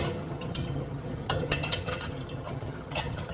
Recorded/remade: remade